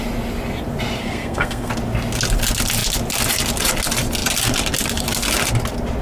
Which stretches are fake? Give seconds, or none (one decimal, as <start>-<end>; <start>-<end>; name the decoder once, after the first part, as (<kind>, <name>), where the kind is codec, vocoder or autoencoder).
1.0-1.7 (codec, SNAC)